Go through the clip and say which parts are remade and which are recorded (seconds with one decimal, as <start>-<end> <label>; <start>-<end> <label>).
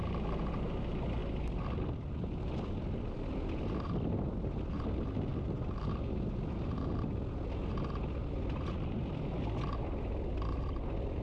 0.0-11.2 recorded